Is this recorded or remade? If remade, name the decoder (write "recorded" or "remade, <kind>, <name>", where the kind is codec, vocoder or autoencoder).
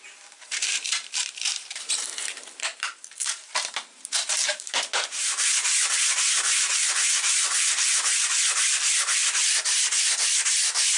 remade, vocoder, BigVGAN v2